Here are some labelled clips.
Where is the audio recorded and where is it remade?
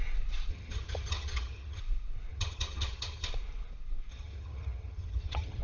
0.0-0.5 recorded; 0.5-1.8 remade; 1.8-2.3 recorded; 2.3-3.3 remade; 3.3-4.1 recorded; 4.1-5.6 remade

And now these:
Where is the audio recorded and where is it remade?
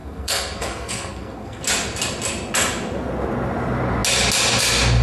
0.0-1.6 remade; 1.6-5.0 recorded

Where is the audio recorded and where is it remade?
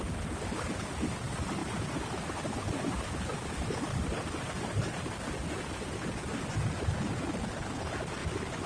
0.0-8.7 recorded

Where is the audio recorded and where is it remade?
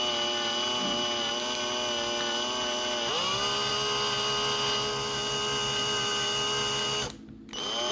0.0-7.9 recorded